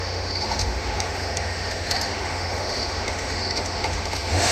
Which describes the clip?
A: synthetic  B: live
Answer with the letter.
A